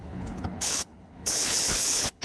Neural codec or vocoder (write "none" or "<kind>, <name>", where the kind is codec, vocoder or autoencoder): codec, HILCodec